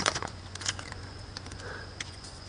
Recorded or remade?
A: remade